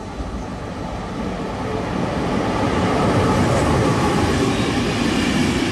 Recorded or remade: recorded